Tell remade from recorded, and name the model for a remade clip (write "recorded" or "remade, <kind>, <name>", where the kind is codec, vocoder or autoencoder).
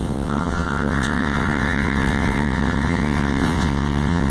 remade, vocoder, WaveNeXt